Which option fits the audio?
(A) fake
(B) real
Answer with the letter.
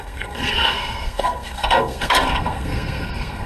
A